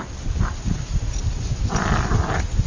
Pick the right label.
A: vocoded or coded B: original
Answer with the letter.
B